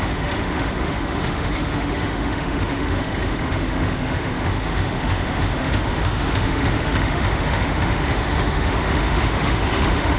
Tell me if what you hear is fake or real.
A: fake